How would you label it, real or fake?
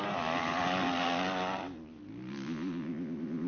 real